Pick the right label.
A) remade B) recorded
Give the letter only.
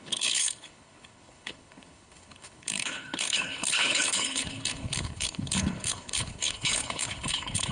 A